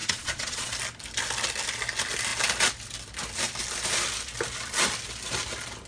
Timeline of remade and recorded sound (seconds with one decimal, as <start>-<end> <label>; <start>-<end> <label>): 0.0-0.7 remade; 0.7-5.9 recorded